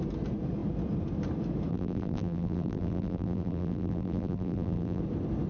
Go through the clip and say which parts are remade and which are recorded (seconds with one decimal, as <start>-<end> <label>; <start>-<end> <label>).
0.0-1.7 recorded; 1.7-5.0 remade; 5.0-5.5 recorded